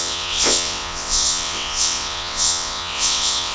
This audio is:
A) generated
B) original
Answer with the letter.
A